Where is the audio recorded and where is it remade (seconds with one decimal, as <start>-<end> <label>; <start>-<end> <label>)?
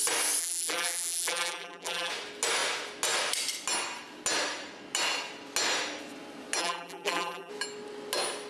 0.0-0.4 recorded; 0.4-2.1 remade; 2.1-6.6 recorded; 6.6-7.5 remade; 7.5-8.5 recorded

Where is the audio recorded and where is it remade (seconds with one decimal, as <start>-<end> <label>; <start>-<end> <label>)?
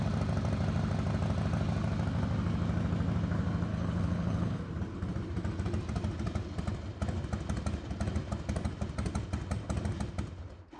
0.0-3.7 recorded; 3.7-4.6 remade; 4.6-10.8 recorded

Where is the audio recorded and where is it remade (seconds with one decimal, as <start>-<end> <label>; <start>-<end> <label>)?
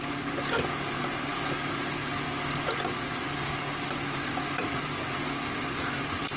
0.0-6.4 recorded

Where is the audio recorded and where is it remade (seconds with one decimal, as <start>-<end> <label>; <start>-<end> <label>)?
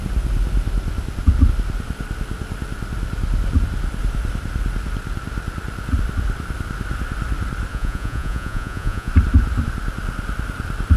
0.0-7.7 recorded; 7.7-9.1 remade; 9.1-11.0 recorded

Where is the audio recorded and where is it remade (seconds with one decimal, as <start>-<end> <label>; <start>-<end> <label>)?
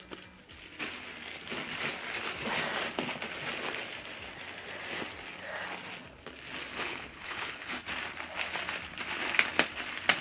0.0-6.7 recorded; 6.7-7.8 remade; 7.8-10.2 recorded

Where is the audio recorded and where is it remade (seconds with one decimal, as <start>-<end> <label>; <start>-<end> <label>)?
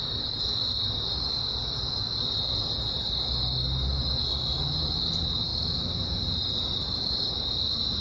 0.0-8.0 recorded